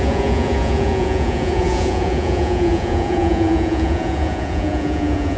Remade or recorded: remade